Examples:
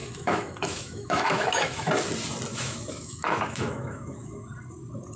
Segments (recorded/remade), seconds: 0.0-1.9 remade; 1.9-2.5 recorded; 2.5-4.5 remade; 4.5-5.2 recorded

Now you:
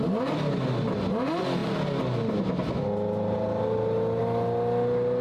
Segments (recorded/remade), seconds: 0.0-5.2 recorded

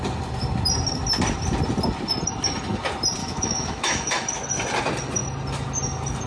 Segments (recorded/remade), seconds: 0.0-3.2 recorded; 3.2-4.3 remade; 4.3-6.3 recorded

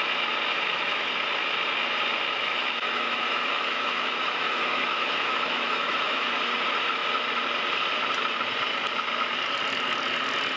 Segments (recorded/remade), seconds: 0.0-0.5 recorded; 0.5-1.1 remade; 1.1-2.4 recorded; 2.4-6.3 remade; 6.3-10.6 recorded